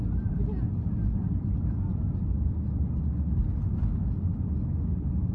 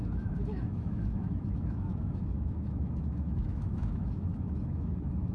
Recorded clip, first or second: first